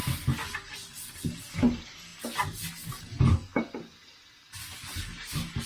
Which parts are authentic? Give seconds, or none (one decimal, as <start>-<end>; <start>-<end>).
0.0-5.7